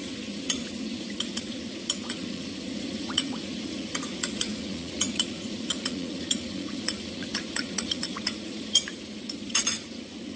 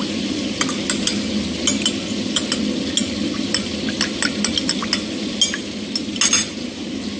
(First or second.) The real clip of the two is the second